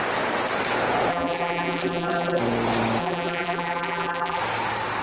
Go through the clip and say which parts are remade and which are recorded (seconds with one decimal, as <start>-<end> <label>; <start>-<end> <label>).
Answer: 0.0-1.1 recorded; 1.1-2.4 remade; 2.4-3.0 recorded; 3.0-4.4 remade; 4.4-5.0 recorded